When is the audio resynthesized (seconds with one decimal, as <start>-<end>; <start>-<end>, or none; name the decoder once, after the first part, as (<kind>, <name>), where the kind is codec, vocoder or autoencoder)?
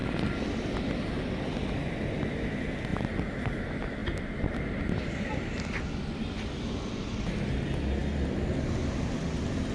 none